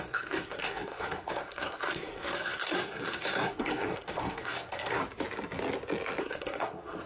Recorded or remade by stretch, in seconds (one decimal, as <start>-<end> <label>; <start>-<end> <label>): 0.0-5.0 remade; 5.0-6.2 recorded; 6.2-7.1 remade